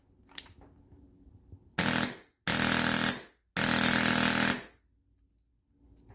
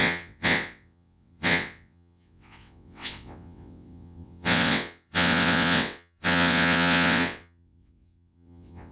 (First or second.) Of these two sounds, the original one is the first